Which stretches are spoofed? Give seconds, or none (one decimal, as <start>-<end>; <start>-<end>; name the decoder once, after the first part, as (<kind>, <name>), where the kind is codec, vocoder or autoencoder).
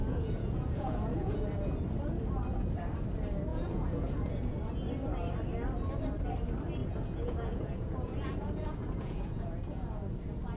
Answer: 0.0-1.5 (vocoder, Vocos); 3.5-4.6; 6.8-10.0